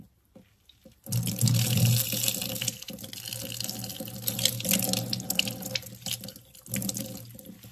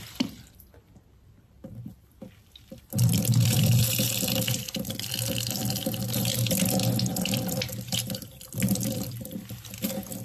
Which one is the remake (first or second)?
second